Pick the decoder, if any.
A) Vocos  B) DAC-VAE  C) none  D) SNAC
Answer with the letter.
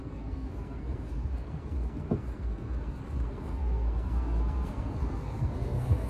D